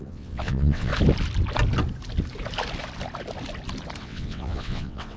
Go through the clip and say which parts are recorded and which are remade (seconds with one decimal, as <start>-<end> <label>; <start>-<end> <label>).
0.0-0.9 remade; 0.9-4.0 recorded; 4.0-5.2 remade